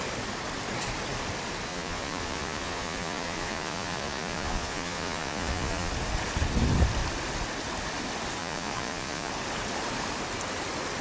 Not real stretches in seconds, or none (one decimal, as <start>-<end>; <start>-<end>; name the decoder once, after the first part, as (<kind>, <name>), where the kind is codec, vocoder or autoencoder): 1.7-5.9 (vocoder, Vocos); 8.4-9.3